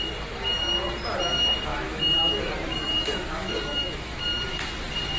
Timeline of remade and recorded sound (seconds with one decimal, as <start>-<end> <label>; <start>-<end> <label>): 0.0-1.7 recorded; 1.7-4.2 remade; 4.2-5.2 recorded

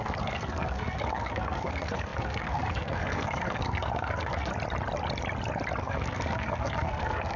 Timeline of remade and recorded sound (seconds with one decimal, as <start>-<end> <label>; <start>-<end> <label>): 0.0-4.5 remade; 4.5-5.8 recorded; 5.8-7.4 remade